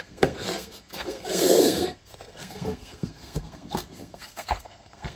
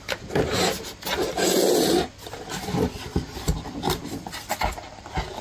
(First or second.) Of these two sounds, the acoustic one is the second